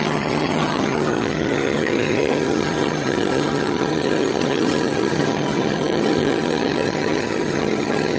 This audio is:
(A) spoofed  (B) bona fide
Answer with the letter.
A